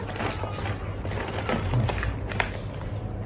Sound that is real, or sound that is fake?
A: real